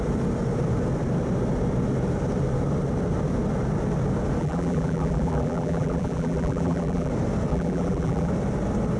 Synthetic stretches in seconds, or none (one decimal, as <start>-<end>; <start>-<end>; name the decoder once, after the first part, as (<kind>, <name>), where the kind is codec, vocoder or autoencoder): 4.4-7.1 (vocoder, BigVGAN v2); 7.5-8.3

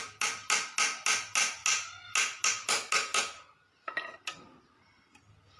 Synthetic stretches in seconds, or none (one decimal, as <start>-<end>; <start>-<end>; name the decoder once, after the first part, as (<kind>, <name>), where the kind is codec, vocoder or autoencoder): none